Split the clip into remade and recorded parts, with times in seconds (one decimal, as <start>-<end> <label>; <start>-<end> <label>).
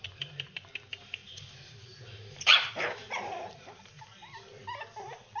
0.0-4.2 remade; 4.2-5.4 recorded